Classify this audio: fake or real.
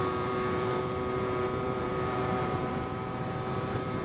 fake